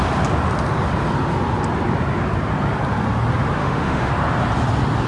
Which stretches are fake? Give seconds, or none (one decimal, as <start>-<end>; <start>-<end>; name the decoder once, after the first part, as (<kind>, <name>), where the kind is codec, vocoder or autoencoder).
3.6-4.1 (autoencoder, DAC-VAE)